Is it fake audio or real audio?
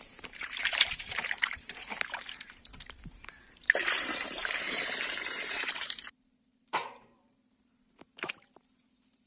fake